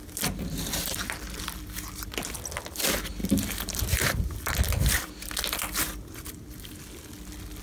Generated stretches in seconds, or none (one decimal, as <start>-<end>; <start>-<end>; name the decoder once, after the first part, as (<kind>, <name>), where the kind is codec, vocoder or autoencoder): 0.0-1.6 (vocoder, BigVGAN v2)